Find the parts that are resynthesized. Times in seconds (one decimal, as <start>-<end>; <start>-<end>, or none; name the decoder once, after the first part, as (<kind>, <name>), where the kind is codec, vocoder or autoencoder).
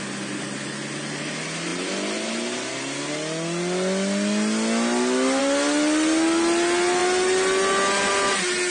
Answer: none